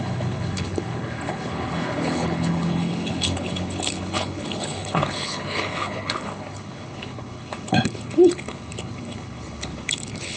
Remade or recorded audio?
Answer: remade